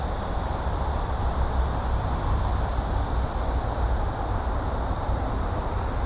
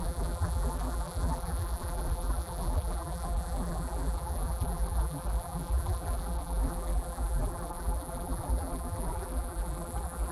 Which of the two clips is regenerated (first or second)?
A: second